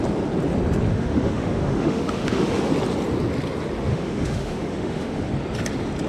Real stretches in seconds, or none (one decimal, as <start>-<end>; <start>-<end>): 0.0-0.9; 2.7-3.9; 5.3-6.1